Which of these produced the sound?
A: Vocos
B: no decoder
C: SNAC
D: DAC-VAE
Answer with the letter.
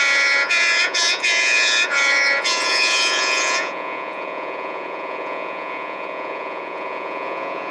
A